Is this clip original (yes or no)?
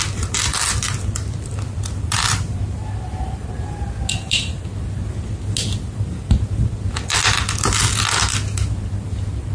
yes